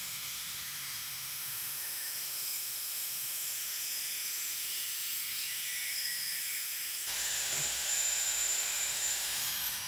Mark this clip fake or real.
fake